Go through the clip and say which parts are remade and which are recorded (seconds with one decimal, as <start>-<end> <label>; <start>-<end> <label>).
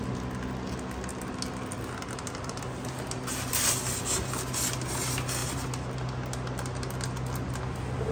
0.0-8.1 recorded